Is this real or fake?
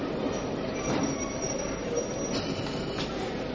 real